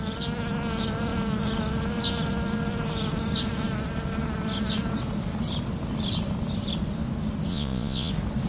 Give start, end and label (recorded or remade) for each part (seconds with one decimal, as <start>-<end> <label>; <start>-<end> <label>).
0.0-7.5 recorded; 7.5-8.1 remade; 8.1-8.5 recorded